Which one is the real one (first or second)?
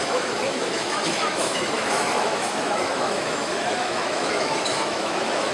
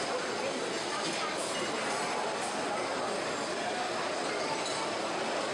second